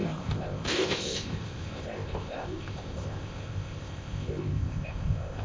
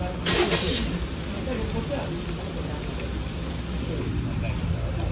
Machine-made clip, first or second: first